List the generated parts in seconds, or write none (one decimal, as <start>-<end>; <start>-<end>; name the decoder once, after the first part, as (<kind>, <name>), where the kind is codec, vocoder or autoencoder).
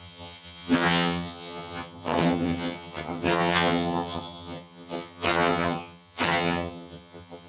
0.0-7.5 (vocoder, HiFi-GAN)